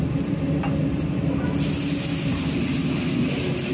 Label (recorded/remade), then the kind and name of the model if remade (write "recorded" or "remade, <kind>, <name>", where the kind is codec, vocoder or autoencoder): recorded